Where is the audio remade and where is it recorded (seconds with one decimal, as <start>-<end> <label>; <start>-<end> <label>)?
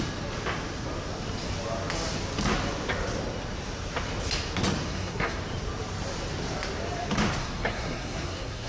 0.0-4.9 recorded; 4.9-5.4 remade; 5.4-7.4 recorded; 7.4-8.7 remade